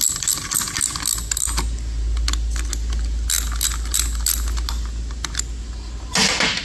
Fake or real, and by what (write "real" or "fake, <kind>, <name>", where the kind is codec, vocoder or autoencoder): real